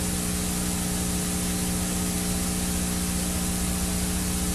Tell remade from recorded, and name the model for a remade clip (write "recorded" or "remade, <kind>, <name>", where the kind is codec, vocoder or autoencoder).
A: recorded